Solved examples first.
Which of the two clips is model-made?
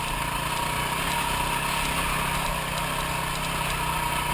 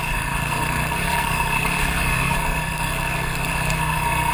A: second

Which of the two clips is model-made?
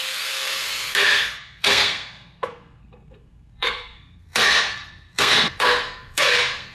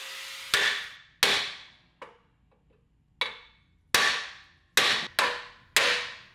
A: first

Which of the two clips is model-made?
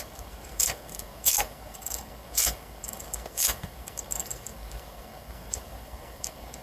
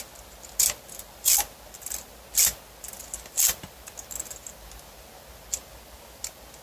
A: first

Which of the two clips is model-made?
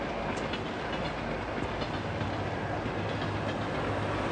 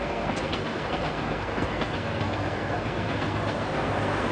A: second